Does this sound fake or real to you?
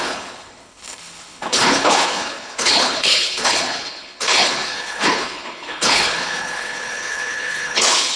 fake